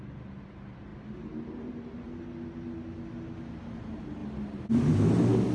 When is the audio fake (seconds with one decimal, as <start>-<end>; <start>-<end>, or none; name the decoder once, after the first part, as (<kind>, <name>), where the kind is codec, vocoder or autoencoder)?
none